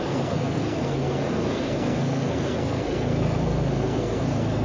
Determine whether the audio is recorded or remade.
remade